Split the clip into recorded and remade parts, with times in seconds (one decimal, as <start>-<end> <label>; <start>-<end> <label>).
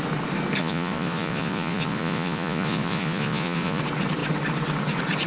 0.0-0.6 recorded; 0.6-3.8 remade; 3.8-5.3 recorded